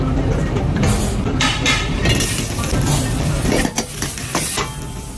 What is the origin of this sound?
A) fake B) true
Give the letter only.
A